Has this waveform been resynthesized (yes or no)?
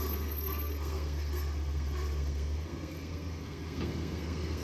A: yes